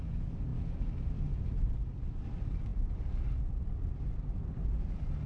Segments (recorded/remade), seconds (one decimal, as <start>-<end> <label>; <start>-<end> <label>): 0.0-5.3 recorded